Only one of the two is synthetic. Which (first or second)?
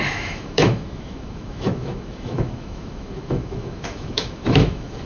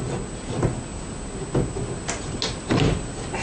first